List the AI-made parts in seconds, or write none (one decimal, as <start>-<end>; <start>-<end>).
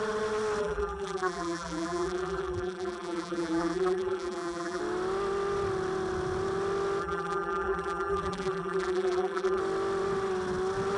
0.6-4.8; 7.0-9.6